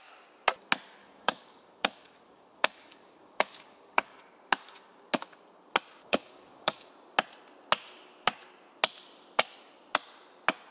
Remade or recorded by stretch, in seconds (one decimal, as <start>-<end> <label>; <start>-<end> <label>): 0.0-1.0 recorded; 1.0-4.2 remade; 4.2-6.0 recorded; 6.0-6.9 remade; 6.9-10.7 recorded